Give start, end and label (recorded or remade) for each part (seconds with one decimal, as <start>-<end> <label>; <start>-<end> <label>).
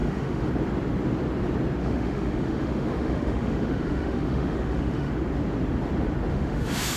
0.0-0.5 remade; 0.5-1.8 recorded; 1.8-5.1 remade; 5.1-6.3 recorded; 6.3-7.0 remade